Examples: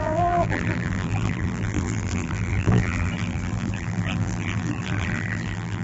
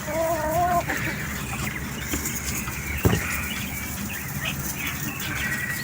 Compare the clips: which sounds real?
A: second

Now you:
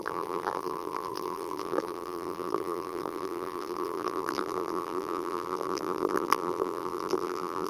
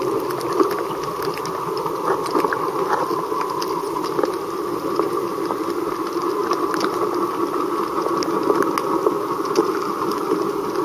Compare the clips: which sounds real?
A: second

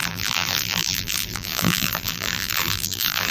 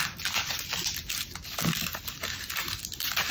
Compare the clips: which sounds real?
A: second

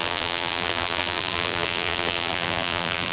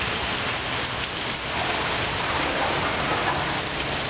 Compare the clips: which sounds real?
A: second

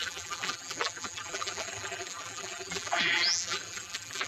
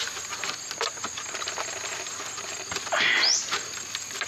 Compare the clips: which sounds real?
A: second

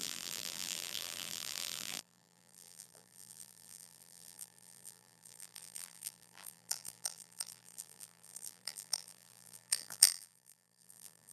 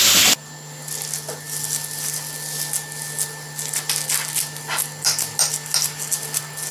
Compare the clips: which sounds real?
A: second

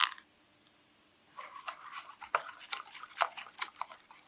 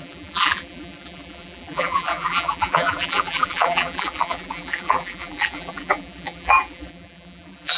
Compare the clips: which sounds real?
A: first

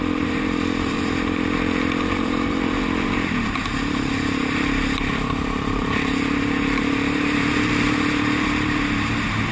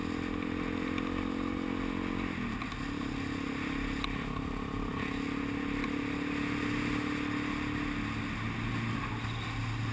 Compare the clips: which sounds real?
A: second